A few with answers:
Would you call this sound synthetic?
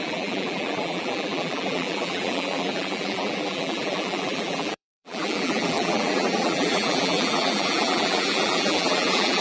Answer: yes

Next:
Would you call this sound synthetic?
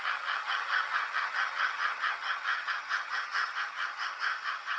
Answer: yes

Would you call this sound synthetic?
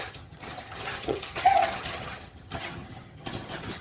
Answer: yes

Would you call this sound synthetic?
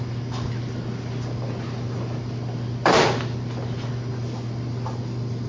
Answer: no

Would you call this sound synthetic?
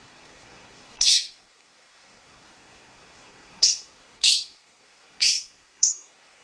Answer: yes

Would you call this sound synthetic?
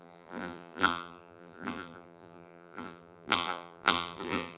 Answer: yes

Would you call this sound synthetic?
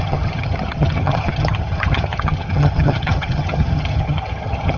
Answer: yes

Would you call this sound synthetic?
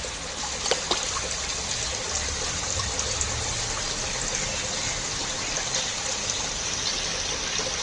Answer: no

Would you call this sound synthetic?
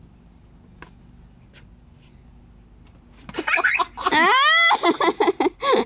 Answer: no